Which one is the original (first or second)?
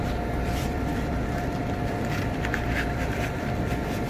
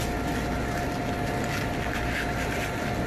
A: second